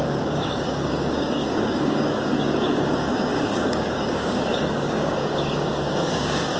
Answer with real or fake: fake